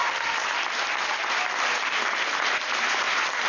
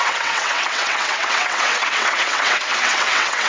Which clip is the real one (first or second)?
first